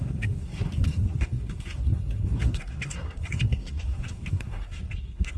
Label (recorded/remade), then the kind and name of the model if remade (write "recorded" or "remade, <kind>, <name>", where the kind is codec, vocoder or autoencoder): remade, codec, SNAC